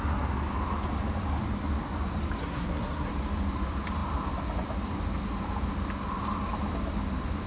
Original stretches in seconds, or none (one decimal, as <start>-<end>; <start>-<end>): 0.0-2.4; 3.1-7.5